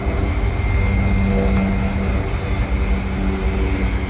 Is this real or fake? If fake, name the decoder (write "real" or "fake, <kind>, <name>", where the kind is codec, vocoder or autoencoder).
real